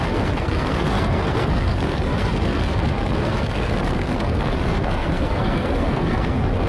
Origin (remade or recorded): remade